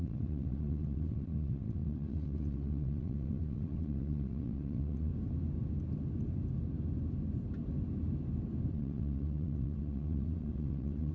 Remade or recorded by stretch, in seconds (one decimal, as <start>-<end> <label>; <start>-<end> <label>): 0.0-5.1 remade; 5.1-8.7 recorded; 8.7-11.1 remade